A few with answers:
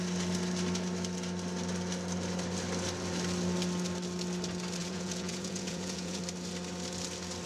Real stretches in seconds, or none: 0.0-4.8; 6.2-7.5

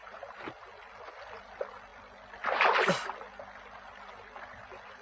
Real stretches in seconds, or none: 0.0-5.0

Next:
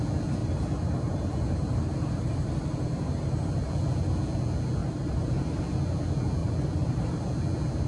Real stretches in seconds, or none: 0.0-0.4; 3.7-4.8; 5.6-6.4; 7.2-7.9

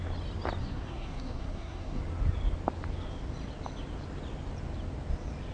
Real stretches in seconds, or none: 0.0-0.6; 2.0-5.5

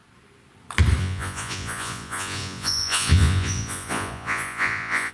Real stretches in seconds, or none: 0.0-1.0

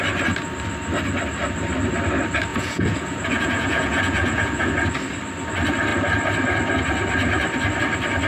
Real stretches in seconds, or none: 0.0-2.5; 4.7-8.3

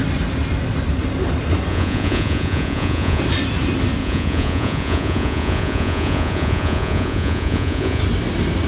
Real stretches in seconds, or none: 0.0-1.7; 3.2-4.0; 8.0-8.7